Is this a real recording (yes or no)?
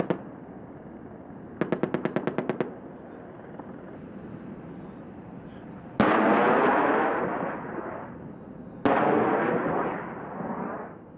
yes